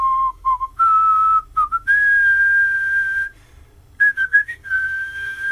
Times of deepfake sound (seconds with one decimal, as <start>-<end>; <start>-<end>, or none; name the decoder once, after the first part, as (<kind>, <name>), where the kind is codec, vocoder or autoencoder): 0.0-0.7 (codec, SNAC); 4.0-5.5